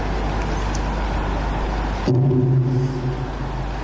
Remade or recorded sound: recorded